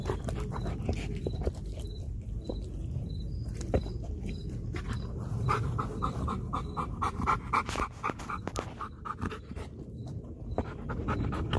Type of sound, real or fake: fake